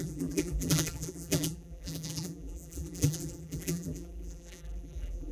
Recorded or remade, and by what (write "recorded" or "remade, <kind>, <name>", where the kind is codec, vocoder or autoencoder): remade, vocoder, BigVGAN v2